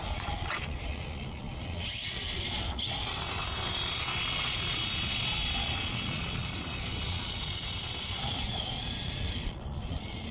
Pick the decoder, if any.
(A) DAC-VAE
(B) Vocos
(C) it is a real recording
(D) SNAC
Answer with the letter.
B